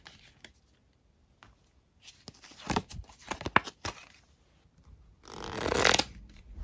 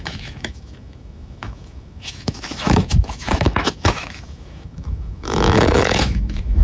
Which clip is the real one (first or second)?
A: first